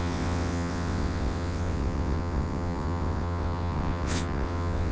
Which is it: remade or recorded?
remade